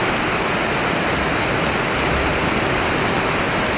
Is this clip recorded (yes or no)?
yes